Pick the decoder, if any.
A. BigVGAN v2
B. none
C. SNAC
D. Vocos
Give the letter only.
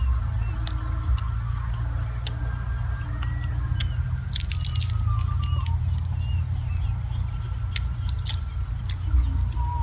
B